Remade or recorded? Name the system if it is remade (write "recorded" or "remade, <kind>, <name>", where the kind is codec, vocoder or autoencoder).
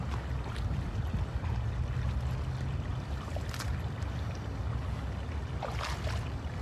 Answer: recorded